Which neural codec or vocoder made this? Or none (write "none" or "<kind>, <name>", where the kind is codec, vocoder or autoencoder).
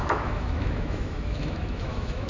autoencoder, DAC-VAE